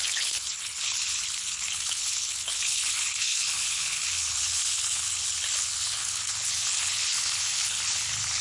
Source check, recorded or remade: remade